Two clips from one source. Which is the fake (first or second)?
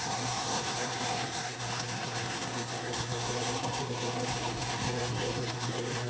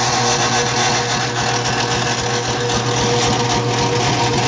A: first